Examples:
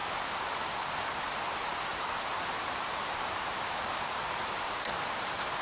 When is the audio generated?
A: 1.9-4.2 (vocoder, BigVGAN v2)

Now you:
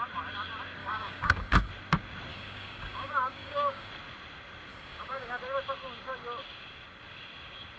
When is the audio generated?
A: 0.8-1.7 (codec, DAC); 2.3-3.9; 4.7-5.4

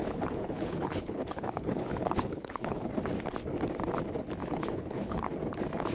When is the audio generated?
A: 0.0-2.9 (codec, HILCodec); 4.4-5.3

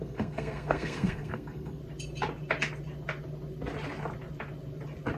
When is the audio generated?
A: 0.0-1.8 (codec, SNAC)

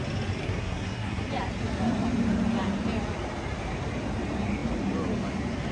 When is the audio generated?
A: 0.4-1.3 (codec, SNAC)

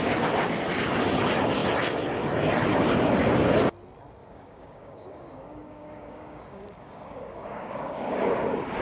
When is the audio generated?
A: 4.2-8.2 (codec, DAC)

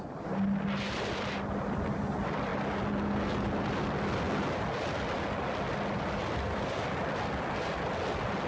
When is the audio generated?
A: none

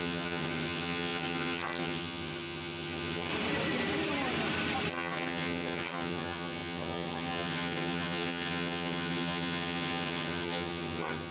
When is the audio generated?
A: 0.0-3.3 (vocoder, HiFi-GAN); 4.9-11.3